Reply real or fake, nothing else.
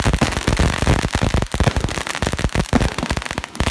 real